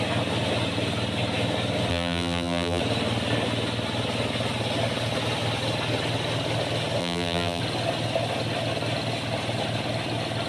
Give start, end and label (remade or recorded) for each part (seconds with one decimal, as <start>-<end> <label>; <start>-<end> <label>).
0.0-1.9 recorded; 1.9-2.8 remade; 2.8-7.0 recorded; 7.0-7.6 remade; 7.6-10.5 recorded